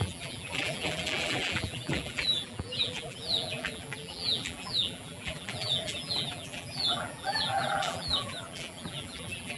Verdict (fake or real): fake